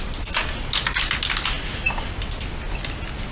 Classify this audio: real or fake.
real